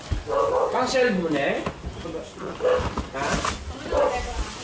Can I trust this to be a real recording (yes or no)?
yes